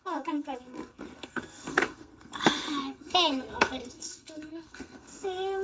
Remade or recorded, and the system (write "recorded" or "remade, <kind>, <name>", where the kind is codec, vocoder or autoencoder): remade, codec, SNAC